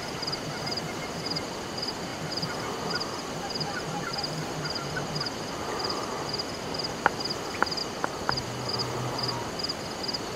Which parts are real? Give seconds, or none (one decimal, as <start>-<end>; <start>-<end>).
0.0-2.1; 6.7-7.8; 8.3-10.4

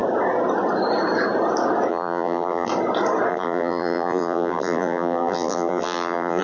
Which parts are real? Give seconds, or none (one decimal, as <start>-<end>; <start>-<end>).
0.0-1.9; 2.7-3.3

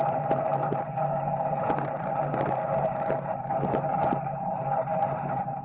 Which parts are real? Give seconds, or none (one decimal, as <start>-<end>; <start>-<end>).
0.5-1.7

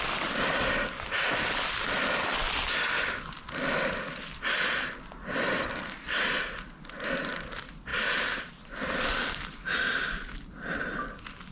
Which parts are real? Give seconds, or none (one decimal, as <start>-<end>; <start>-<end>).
0.0-11.5

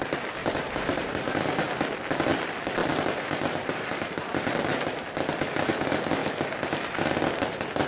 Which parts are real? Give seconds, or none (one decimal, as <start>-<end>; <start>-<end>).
0.0-0.4; 1.8-2.8; 5.2-7.9

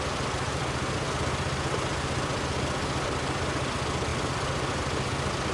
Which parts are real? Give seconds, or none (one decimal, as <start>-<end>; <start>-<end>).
0.0-5.5